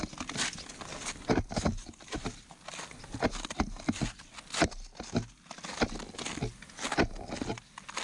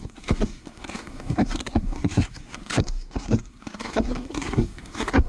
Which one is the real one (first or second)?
first